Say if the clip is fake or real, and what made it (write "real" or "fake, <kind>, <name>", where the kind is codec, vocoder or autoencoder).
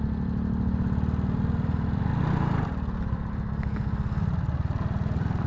real